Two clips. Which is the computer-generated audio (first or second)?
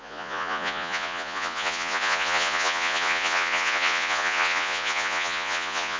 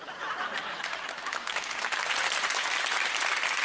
first